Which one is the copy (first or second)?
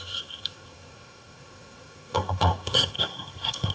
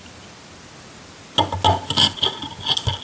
first